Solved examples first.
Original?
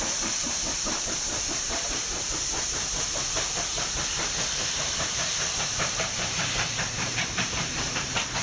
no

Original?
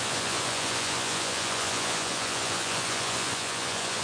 no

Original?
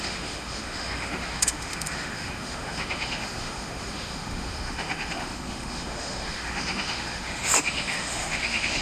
no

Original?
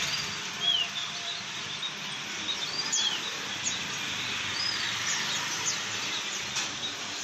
yes